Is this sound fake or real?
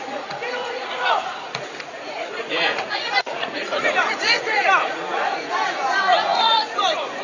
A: fake